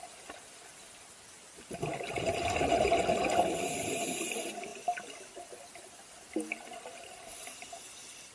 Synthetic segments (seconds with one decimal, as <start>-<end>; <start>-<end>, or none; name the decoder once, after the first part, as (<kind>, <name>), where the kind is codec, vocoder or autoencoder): none